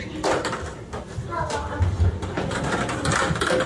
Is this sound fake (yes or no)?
no